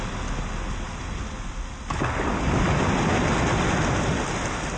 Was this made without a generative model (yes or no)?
yes